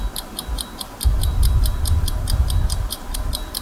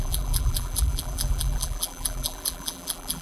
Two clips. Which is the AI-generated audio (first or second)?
second